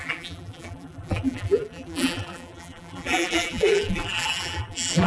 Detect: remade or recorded remade